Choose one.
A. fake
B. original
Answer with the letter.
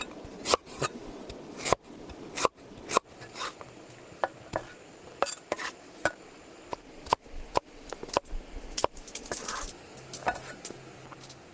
B